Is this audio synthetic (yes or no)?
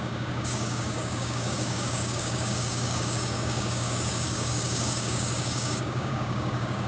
yes